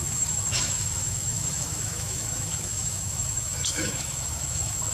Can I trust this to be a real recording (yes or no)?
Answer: no